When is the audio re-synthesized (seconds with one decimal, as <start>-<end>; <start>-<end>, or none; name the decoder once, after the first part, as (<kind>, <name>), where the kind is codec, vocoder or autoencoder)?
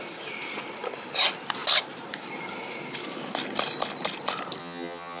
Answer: 4.6-5.2 (vocoder, HiFi-GAN)